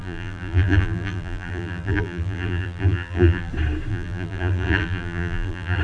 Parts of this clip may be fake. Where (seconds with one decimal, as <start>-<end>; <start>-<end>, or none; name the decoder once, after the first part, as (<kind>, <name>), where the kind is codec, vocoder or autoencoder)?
0.0-3.5 (vocoder, BigVGAN v2); 3.9-5.8

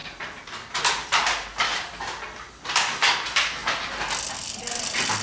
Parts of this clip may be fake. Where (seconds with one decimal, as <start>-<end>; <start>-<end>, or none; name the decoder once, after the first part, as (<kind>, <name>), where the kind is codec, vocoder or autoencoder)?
none